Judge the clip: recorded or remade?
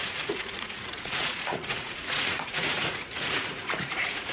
remade